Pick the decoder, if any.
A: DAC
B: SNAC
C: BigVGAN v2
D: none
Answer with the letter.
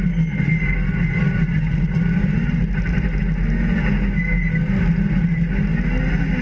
D